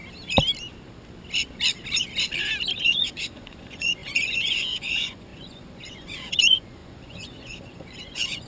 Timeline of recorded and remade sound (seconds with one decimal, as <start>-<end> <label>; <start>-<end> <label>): 0.0-2.8 recorded; 2.8-8.5 remade